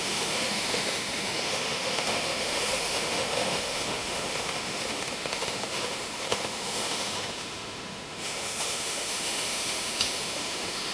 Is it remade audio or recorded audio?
remade